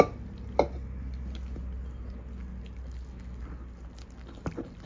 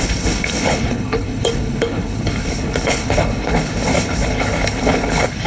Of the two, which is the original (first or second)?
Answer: first